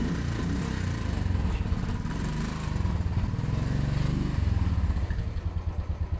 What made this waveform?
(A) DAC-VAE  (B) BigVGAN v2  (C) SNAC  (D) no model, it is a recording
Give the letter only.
D